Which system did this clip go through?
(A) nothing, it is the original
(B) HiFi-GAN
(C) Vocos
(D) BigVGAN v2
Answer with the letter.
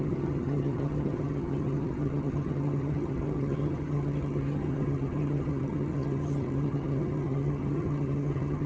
B